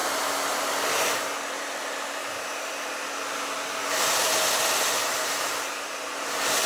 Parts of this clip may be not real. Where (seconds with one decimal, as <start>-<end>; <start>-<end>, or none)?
5.0-6.0